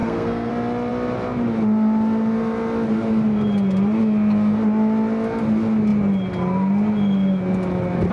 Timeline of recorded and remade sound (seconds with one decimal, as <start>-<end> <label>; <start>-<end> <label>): 0.0-0.5 remade; 0.5-8.1 recorded